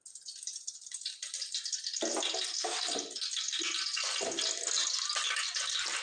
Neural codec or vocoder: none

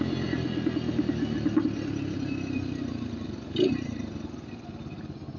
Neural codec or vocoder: none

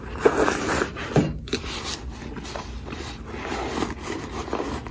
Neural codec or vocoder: none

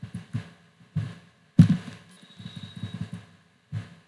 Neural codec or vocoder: none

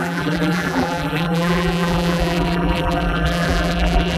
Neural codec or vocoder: vocoder, BigVGAN v2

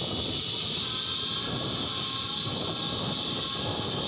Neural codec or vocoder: none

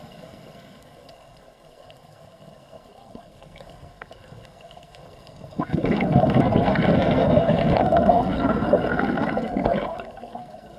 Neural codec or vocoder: codec, SNAC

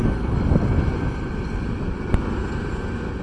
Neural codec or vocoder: none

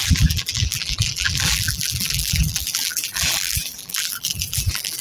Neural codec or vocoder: vocoder, BigVGAN v2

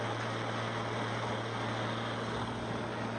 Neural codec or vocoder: none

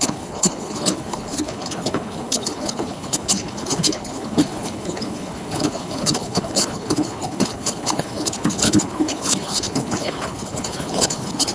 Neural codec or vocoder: codec, HILCodec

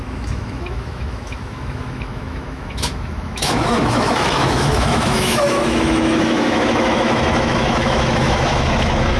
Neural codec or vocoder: autoencoder, DAC-VAE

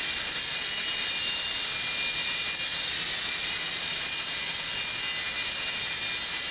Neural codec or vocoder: none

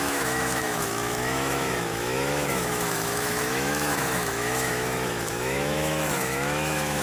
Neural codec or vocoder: autoencoder, DAC-VAE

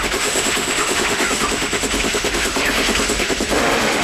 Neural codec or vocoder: autoencoder, DAC-VAE